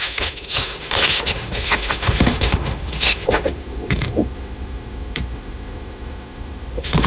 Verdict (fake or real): fake